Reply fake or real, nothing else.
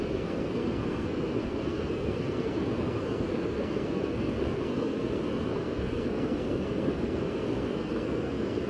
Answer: fake